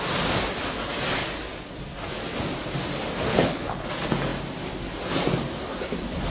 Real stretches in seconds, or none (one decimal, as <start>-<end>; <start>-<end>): 0.0-3.3; 3.9-6.3